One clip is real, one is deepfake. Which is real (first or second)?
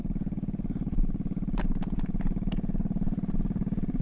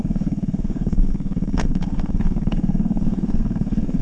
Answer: first